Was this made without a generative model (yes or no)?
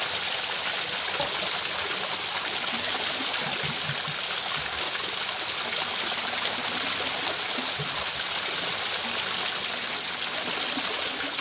yes